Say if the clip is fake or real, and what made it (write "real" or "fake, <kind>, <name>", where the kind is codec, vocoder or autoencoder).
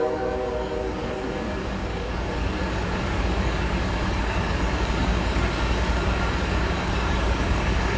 fake, codec, DAC